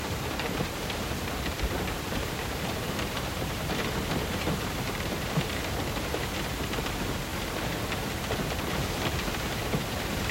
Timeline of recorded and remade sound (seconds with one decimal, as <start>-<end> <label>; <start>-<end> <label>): 0.0-7.3 remade; 7.3-9.3 recorded; 9.3-10.3 remade